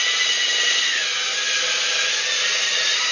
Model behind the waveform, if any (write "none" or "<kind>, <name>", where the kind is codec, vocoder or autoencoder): none